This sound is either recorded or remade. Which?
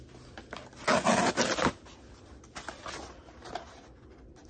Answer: recorded